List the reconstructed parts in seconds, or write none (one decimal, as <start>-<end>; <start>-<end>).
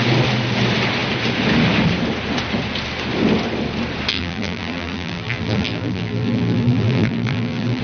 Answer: 4.1-7.8